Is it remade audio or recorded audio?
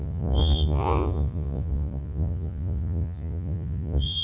remade